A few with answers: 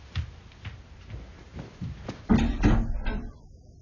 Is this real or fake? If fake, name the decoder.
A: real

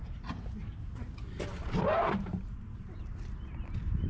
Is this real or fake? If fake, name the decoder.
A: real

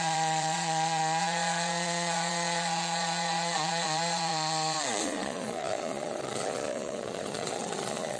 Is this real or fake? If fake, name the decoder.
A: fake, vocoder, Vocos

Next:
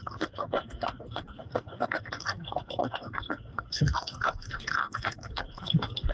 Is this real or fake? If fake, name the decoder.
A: fake, codec, SNAC